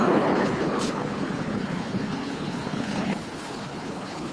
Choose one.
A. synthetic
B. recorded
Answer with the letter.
A